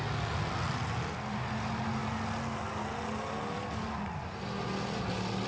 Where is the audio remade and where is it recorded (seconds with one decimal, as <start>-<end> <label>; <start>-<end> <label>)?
0.0-5.5 recorded